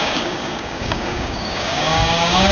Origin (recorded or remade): remade